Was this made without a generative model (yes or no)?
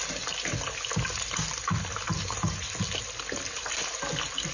yes